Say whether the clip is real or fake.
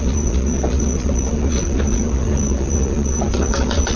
fake